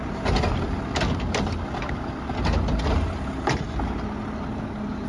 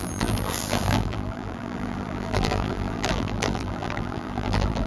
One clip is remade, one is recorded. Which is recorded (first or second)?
first